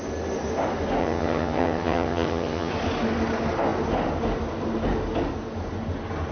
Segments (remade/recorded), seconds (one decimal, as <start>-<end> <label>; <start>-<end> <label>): 0.0-1.0 recorded; 1.0-2.7 remade; 2.7-6.3 recorded